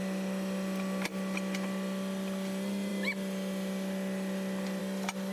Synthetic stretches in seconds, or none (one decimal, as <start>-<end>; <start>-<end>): none